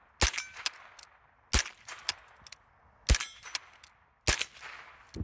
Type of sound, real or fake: real